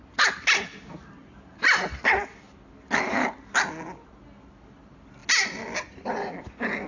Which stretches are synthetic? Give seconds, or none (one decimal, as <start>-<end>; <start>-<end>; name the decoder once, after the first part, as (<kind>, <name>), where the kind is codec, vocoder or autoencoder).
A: none

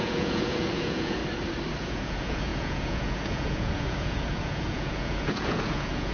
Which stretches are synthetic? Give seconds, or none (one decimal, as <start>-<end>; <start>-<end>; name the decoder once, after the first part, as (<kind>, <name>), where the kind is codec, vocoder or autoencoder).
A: 0.0-1.2 (vocoder, Vocos); 1.8-6.1

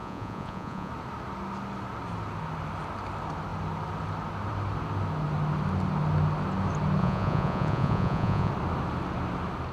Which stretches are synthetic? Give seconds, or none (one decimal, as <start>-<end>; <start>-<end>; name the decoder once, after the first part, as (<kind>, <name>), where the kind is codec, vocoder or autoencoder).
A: 0.0-0.9 (vocoder, Vocos); 7.0-8.5

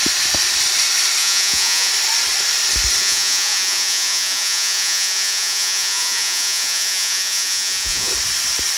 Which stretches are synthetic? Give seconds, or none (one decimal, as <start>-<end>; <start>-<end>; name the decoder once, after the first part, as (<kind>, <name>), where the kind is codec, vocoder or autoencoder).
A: 1.2-1.9 (vocoder, Vocos); 3.0-8.1

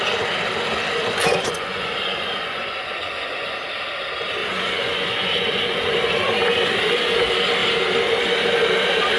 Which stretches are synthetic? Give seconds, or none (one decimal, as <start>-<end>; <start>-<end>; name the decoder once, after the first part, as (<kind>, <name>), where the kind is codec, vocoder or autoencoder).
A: 1.2-3.6 (vocoder, Vocos); 4.4-5.9

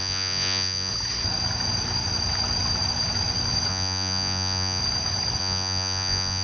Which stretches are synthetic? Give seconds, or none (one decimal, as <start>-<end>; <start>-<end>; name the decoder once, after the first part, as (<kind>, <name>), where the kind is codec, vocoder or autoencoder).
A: 0.0-0.9 (vocoder, Vocos); 3.7-4.8; 5.4-6.4

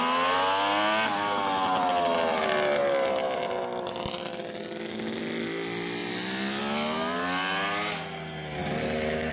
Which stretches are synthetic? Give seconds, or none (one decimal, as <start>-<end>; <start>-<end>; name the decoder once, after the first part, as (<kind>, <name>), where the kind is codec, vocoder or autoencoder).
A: none